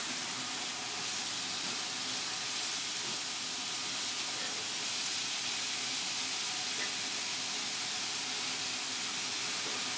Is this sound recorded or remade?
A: recorded